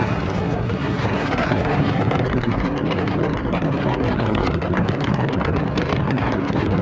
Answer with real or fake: fake